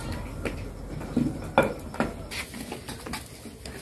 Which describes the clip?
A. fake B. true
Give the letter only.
B